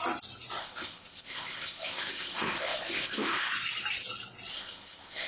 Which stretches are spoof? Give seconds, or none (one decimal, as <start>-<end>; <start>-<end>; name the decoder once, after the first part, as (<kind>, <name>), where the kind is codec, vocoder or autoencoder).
0.6-3.5 (codec, ZipCodec); 4.5-5.3